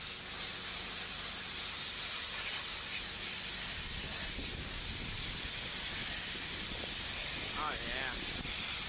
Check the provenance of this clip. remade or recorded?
recorded